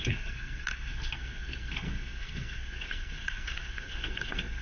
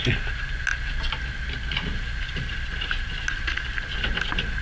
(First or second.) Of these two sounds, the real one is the second